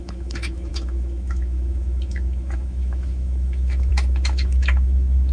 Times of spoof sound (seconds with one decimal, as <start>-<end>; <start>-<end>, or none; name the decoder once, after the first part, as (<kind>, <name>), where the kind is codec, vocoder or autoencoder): 0.0-5.3 (autoencoder, DAC-VAE)